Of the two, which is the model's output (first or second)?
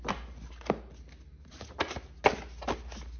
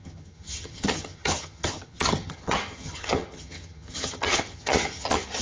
second